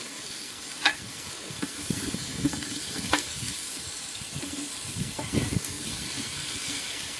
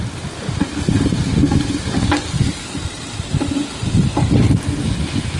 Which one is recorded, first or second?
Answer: second